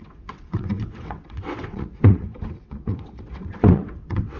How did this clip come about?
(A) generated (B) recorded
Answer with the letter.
A